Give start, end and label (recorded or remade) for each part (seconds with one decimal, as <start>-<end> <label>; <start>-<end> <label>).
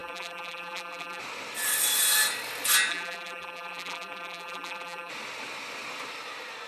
0.0-1.2 remade; 1.2-2.9 recorded; 2.9-5.1 remade; 5.1-6.7 recorded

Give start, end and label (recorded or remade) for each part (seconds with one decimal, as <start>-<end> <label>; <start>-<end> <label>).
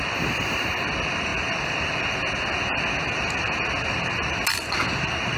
0.0-5.4 recorded